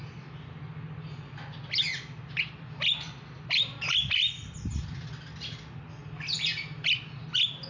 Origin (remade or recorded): recorded